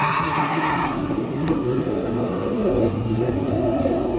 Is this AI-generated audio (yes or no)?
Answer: yes